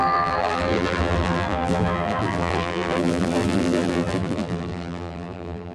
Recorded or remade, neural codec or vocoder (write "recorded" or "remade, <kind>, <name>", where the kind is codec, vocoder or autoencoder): remade, vocoder, BigVGAN v2